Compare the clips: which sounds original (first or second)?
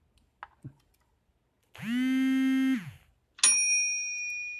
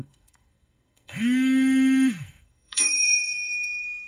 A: first